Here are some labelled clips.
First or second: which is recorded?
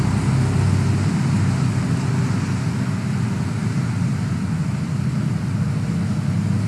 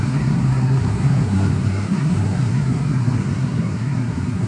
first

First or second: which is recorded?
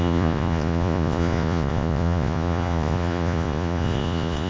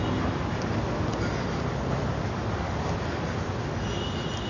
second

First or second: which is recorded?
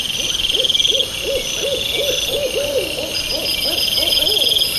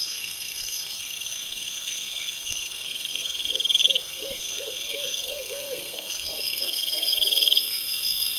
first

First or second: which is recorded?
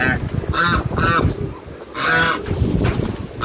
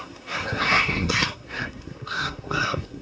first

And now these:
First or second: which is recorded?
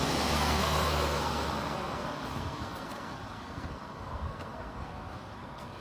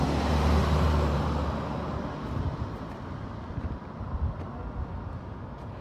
second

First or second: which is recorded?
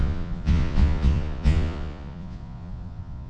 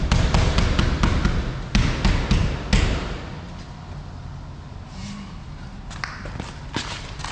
second